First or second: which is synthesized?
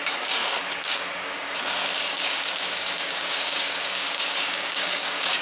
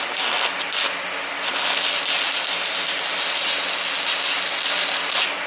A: first